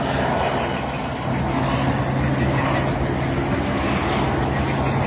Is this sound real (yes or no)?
yes